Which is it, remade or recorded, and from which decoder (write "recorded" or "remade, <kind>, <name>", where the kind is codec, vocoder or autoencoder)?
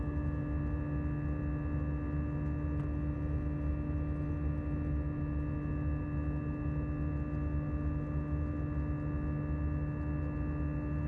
recorded